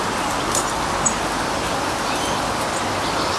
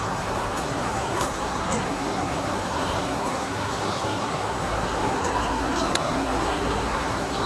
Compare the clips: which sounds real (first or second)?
first